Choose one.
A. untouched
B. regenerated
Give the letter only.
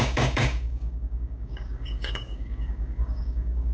B